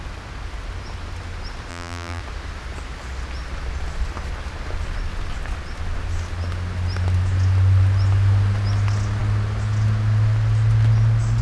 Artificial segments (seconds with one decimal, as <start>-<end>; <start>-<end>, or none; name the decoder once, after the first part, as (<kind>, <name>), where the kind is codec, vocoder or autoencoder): 1.7-2.2 (vocoder, BigVGAN v2)